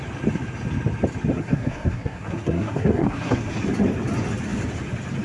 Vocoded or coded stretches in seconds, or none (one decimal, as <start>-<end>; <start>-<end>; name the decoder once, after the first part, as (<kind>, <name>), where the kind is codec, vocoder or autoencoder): 1.3-3.5 (codec, SNAC)